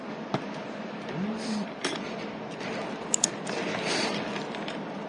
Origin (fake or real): real